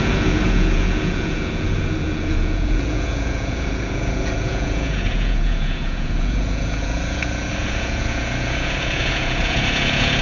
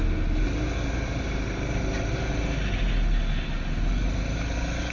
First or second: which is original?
second